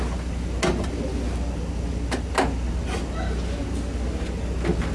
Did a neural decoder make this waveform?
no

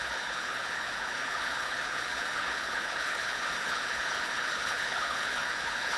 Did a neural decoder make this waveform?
yes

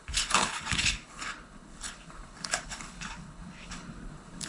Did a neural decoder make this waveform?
yes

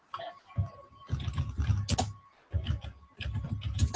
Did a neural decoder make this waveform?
no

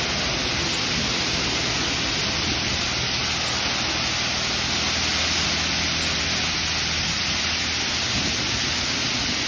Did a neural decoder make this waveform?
no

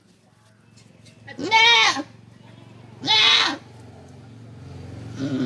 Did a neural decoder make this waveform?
no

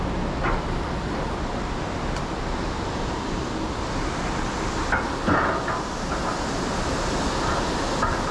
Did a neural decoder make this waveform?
no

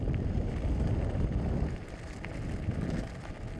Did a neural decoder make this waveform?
no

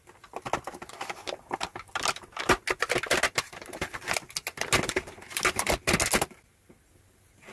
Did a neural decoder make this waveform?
no